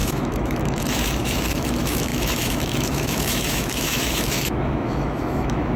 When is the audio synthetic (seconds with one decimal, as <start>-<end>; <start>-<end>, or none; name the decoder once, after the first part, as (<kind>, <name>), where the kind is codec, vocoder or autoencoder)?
0.0-5.8 (autoencoder, DAC-VAE)